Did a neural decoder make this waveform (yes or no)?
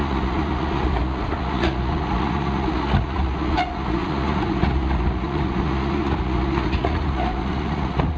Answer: yes